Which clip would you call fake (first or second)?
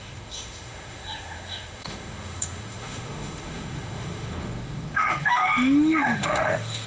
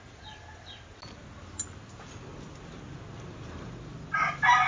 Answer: first